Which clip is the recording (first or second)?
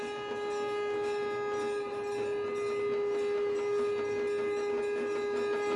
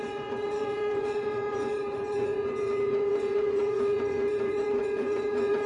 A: first